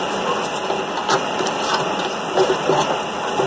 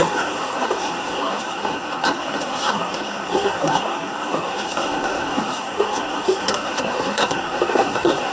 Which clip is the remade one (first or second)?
second